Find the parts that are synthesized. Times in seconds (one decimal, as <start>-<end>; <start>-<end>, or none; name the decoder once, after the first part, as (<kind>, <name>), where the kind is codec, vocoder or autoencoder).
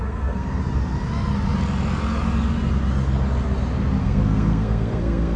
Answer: 0.0-0.6 (codec, SNAC); 4.0-5.4